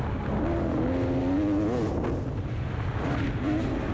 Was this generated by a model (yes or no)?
no